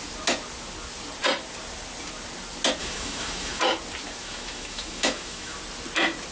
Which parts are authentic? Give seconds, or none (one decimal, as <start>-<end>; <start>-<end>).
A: 0.0-2.8; 3.6-4.2; 5.6-6.3